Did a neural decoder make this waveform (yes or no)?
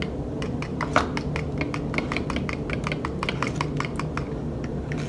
no